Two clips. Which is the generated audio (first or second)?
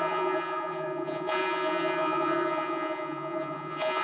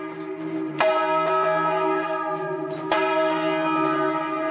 first